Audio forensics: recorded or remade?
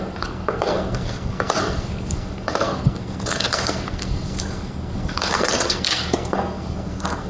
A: remade